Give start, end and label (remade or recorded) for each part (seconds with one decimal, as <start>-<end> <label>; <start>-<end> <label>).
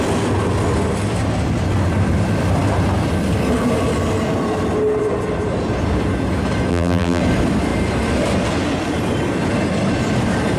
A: 0.0-6.7 recorded; 6.7-7.2 remade; 7.2-10.6 recorded